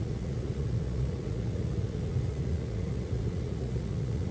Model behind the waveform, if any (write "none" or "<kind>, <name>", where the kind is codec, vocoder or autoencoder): vocoder, Vocos